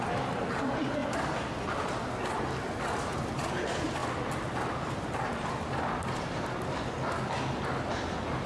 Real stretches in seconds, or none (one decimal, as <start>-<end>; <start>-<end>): 0.0-1.0; 1.7-8.5